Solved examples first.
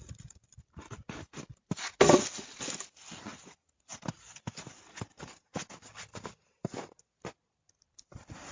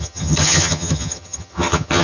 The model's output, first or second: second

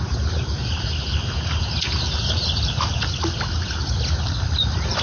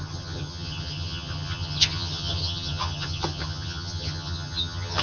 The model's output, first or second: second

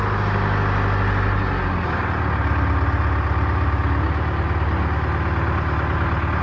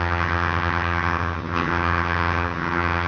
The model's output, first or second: second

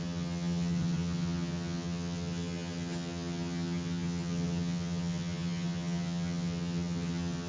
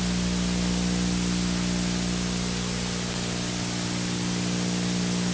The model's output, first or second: first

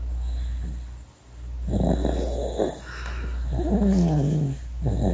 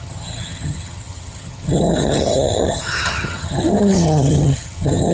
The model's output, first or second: second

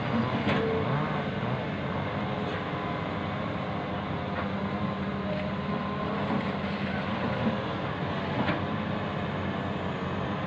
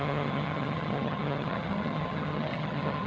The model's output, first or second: second